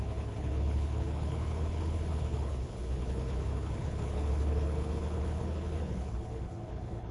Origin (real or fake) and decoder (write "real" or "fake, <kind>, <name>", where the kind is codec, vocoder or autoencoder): fake, codec, HILCodec